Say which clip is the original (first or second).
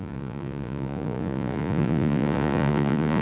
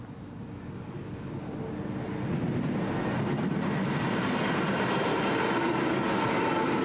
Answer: second